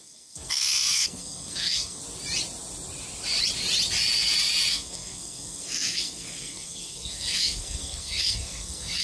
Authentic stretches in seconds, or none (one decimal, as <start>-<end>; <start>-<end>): 2.0-4.7